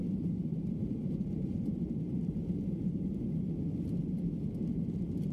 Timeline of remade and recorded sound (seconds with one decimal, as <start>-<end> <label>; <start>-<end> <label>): 0.0-3.2 remade; 3.2-5.3 recorded

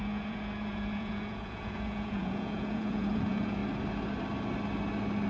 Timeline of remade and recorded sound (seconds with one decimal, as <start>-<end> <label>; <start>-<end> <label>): 0.0-3.6 remade; 3.6-5.3 recorded

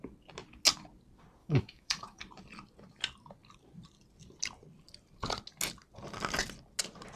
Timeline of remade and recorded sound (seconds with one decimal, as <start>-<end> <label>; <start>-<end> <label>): 0.0-1.4 recorded; 1.4-2.2 remade; 2.2-7.2 recorded

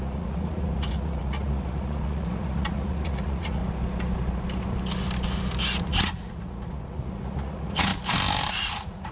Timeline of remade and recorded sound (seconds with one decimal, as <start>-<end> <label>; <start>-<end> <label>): 0.0-3.6 remade; 3.6-5.8 recorded; 5.8-7.9 remade; 7.9-8.5 recorded; 8.5-9.1 remade

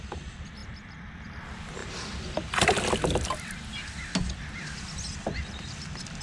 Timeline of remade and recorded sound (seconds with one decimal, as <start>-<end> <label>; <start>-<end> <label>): 0.0-0.6 recorded; 0.6-1.3 remade; 1.3-6.2 recorded

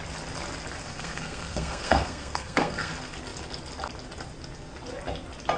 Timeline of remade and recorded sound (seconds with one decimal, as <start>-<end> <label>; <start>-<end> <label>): 0.0-0.8 recorded; 0.8-2.9 remade; 2.9-5.6 recorded